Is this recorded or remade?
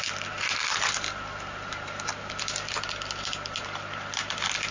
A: recorded